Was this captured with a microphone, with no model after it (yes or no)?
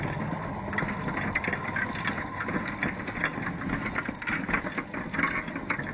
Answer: yes